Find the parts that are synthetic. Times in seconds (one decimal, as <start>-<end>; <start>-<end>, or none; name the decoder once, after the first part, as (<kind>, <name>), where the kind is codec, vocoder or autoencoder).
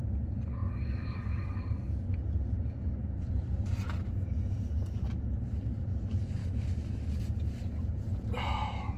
6.4-7.1 (autoencoder, DAC-VAE)